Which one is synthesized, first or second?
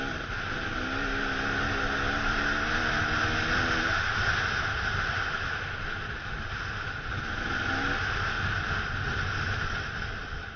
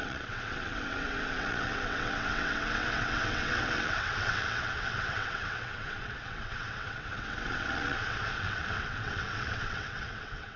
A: second